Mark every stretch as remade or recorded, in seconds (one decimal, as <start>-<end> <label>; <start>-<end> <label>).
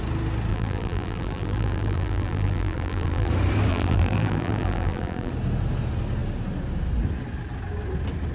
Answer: 0.0-0.5 recorded; 0.5-3.3 remade; 3.3-3.7 recorded; 3.7-5.3 remade; 5.3-8.3 recorded